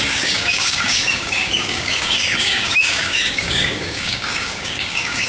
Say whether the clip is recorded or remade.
remade